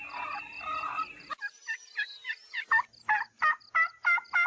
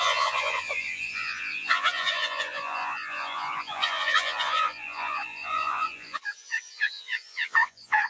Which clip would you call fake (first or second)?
second